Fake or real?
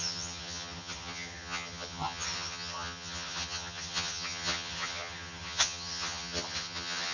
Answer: fake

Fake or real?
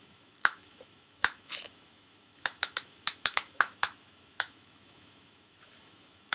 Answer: fake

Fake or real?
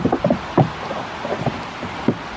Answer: real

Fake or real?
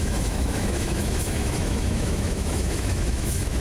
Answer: fake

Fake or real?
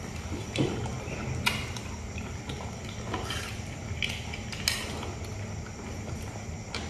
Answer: real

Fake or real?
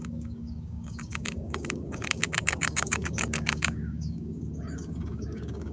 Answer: fake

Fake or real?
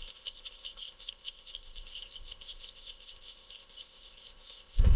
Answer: fake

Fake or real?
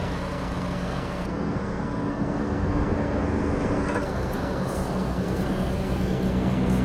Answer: fake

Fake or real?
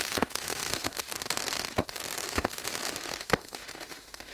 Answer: fake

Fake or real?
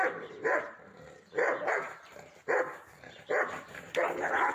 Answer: fake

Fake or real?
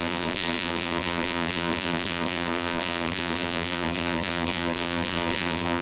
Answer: fake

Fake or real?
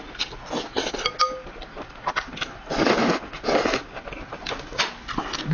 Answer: real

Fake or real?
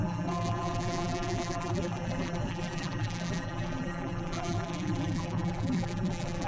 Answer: fake